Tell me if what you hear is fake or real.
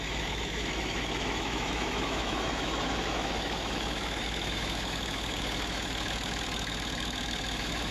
fake